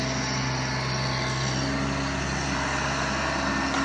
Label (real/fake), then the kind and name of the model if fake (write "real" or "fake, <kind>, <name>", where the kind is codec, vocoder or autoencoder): real